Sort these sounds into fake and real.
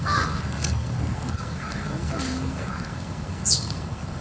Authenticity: fake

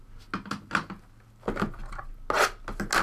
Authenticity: real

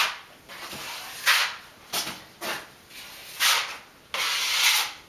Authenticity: real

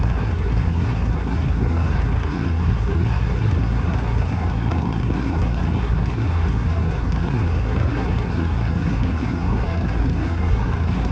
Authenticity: fake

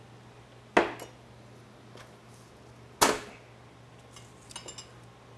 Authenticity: real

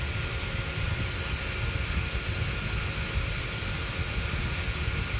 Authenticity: real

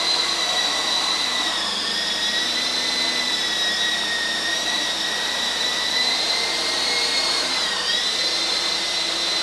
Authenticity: fake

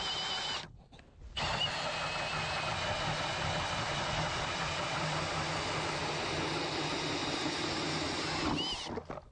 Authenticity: real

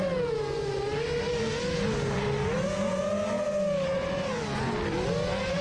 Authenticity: real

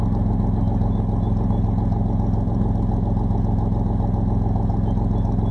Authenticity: real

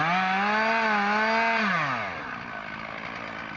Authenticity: real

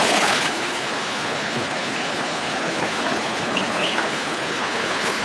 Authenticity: fake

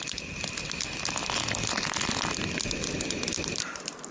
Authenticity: real